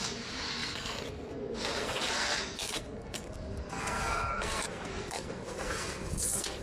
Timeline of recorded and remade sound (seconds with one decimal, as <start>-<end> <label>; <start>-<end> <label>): 0.0-6.6 remade